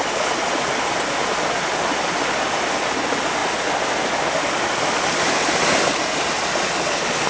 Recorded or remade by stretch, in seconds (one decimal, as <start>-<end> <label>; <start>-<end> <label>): 0.0-7.3 recorded